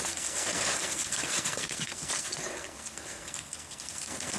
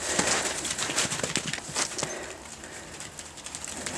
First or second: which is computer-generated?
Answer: first